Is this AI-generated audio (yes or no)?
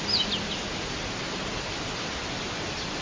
no